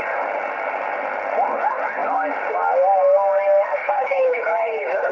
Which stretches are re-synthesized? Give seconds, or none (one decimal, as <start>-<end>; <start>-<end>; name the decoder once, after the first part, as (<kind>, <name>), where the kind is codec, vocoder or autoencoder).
3.8-5.1 (codec, HILCodec)